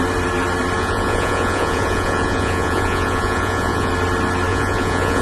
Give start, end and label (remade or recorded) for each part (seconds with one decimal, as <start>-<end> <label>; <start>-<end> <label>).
0.0-0.8 recorded; 0.8-3.9 remade; 3.9-4.5 recorded; 4.5-5.2 remade